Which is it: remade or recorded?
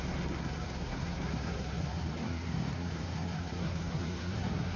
remade